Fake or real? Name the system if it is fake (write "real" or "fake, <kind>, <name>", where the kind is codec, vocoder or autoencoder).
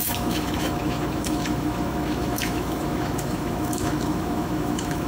fake, autoencoder, DAC-VAE